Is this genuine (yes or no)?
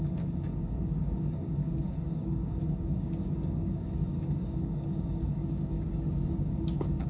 no